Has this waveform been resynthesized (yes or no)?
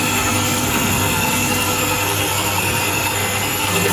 yes